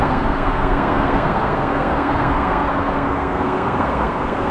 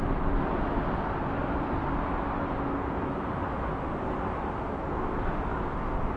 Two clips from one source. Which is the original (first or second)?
second